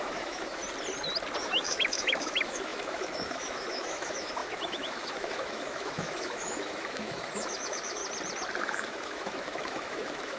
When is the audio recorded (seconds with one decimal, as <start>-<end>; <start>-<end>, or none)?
0.6-1.4; 8.0-8.6